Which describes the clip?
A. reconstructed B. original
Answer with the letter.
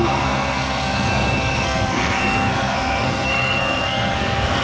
A